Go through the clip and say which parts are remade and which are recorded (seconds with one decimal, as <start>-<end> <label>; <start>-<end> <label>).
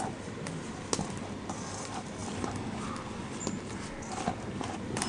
0.0-5.1 recorded